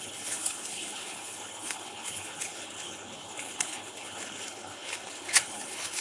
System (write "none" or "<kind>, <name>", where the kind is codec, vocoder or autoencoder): codec, HILCodec